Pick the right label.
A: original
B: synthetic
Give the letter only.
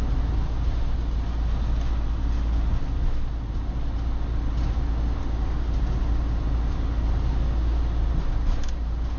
A